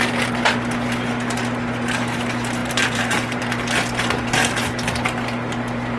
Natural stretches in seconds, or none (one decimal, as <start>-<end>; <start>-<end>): 0.0-2.6; 3.4-6.0